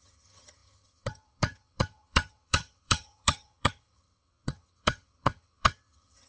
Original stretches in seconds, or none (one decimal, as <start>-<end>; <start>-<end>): none